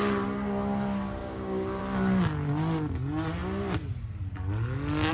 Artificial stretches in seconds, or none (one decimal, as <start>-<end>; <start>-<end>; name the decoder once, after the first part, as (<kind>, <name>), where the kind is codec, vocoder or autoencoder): 1.2-1.8 (codec, DAC)